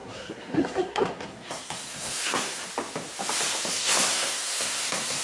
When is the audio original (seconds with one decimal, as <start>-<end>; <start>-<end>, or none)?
2.6-3.7